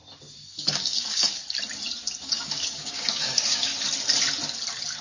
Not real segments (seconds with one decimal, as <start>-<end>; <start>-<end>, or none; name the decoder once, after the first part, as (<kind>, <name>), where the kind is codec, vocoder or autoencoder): 0.5-1.4 (codec, DAC); 2.2-3.7